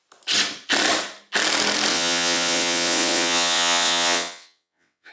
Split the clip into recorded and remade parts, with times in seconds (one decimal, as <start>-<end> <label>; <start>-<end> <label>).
0.0-1.9 recorded; 1.9-5.1 remade